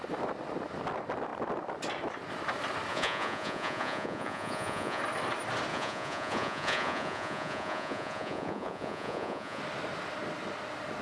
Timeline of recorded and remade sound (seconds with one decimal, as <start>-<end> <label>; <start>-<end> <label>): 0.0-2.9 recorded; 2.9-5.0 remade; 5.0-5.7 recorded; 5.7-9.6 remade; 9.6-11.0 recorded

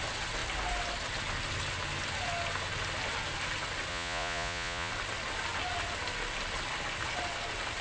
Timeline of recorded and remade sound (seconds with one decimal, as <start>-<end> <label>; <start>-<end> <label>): 0.0-3.9 recorded; 3.9-4.9 remade; 4.9-7.8 recorded

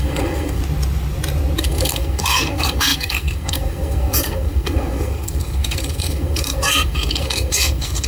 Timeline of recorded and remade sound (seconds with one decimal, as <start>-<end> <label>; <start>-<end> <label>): 0.0-0.6 remade; 0.6-1.6 recorded; 1.6-8.1 remade

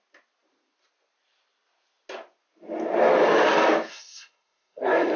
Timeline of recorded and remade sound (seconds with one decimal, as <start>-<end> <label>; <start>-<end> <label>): 0.0-3.9 recorded; 3.9-5.2 remade

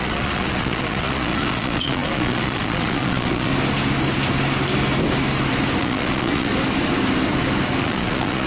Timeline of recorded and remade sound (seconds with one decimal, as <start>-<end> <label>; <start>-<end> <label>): 0.0-3.5 remade; 3.5-5.8 recorded; 5.8-6.5 remade; 6.5-7.8 recorded; 7.8-8.5 remade